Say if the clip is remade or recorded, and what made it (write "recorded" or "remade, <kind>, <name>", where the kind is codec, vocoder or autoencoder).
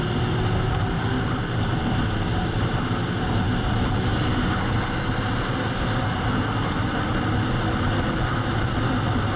recorded